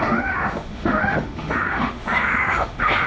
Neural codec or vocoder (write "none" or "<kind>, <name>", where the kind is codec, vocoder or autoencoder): autoencoder, DAC-VAE